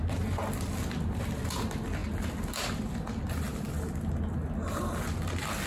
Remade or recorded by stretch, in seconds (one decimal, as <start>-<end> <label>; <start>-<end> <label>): 0.0-5.7 recorded